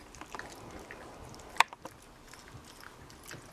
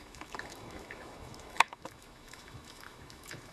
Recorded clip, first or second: first